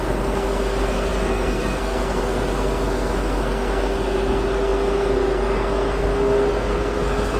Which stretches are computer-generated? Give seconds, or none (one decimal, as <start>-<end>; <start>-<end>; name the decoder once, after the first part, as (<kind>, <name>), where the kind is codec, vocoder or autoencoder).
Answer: 0.0-7.4 (codec, SNAC)